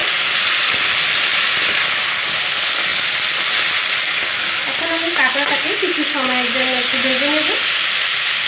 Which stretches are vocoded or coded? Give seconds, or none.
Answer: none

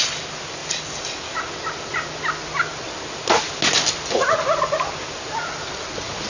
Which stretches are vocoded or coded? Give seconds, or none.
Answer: none

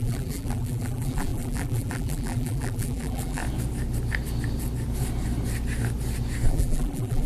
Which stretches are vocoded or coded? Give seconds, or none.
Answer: 0.0-3.4 (vocoder, BigVGAN v2); 6.5-7.3

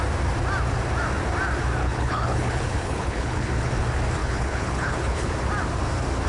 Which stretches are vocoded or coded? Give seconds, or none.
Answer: 1.8-3.7 (codec, HILCodec); 4.2-5.3

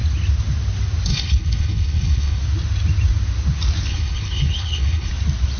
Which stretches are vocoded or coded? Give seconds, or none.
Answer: 1.1-2.4 (codec, HILCodec); 3.9-5.1

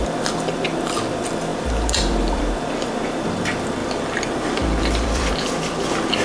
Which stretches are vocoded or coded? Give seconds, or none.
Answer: 1.5-2.4 (vocoder, BigVGAN v2); 3.8-5.3

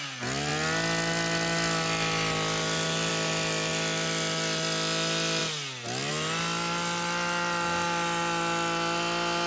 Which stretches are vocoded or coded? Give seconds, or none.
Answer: none

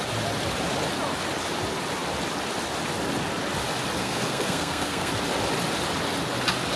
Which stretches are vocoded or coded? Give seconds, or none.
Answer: 4.0-5.1 (codec, SNAC)